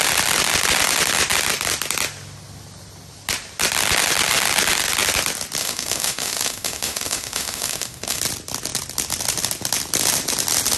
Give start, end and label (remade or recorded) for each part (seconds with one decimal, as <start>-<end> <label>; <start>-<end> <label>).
0.0-5.6 recorded; 5.6-8.2 remade; 8.2-10.8 recorded